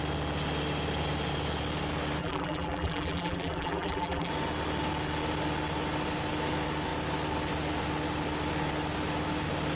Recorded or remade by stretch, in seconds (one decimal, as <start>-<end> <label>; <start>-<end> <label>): 0.0-2.2 recorded; 2.2-4.3 remade; 4.3-9.8 recorded

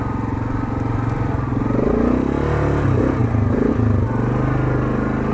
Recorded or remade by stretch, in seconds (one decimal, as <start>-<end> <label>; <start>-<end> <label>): 0.0-1.9 remade; 1.9-5.3 recorded

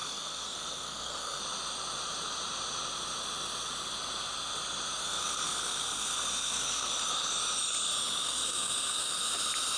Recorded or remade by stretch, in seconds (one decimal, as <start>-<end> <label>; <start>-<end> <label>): 0.0-1.4 remade; 1.4-5.0 recorded; 5.0-6.9 remade; 6.9-8.2 recorded; 8.2-9.2 remade; 9.2-9.8 recorded